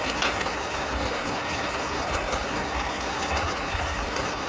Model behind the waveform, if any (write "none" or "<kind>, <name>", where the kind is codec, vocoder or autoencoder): codec, SNAC